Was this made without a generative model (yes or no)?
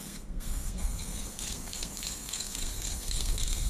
no